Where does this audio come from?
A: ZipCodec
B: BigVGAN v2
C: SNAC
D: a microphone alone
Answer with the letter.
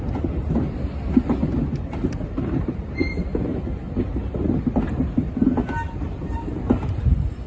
D